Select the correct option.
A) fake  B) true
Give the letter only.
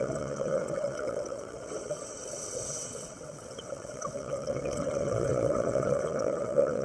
A